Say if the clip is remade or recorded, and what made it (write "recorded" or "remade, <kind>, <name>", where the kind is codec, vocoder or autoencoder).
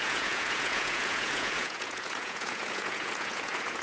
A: remade, vocoder, Vocos